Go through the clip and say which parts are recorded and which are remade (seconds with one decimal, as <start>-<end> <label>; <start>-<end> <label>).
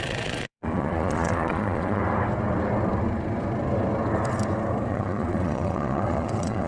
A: 0.0-2.0 remade; 2.0-4.9 recorded; 4.9-6.7 remade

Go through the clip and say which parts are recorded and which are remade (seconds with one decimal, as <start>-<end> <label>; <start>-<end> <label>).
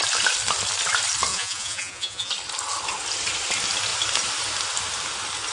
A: 0.0-1.3 recorded; 1.3-2.3 remade; 2.3-5.5 recorded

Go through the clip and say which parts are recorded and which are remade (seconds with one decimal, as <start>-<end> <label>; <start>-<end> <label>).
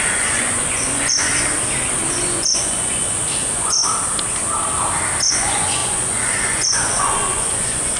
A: 0.0-1.3 remade; 1.3-2.1 recorded; 2.1-3.8 remade; 3.8-5.2 recorded; 5.2-8.0 remade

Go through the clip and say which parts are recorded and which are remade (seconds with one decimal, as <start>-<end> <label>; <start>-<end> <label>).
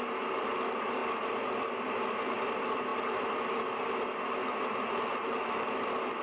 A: 0.0-6.2 recorded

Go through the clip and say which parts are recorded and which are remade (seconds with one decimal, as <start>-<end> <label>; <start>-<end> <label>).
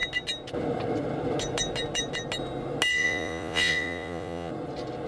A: 0.0-2.9 recorded; 2.9-4.5 remade; 4.5-5.1 recorded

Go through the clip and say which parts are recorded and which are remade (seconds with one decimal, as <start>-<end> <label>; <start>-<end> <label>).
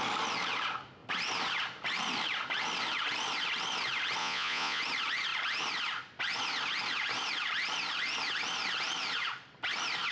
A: 0.0-4.2 recorded; 4.2-4.8 remade; 4.8-10.1 recorded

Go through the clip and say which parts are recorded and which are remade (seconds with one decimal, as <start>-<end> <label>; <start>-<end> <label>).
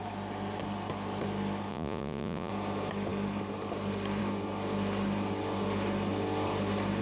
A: 0.0-1.7 recorded; 1.7-2.5 remade; 2.5-7.0 recorded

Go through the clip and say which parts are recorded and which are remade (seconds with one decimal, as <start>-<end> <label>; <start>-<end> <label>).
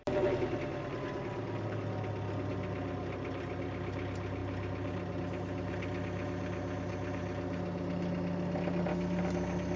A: 0.0-9.8 recorded